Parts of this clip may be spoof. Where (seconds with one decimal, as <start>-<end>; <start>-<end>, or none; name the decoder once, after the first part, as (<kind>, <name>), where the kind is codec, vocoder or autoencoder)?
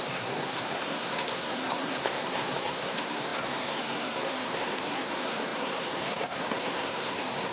0.0-7.5 (codec, SNAC)